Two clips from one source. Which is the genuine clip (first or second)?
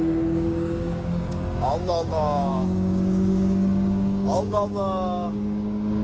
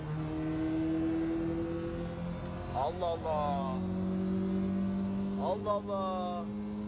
second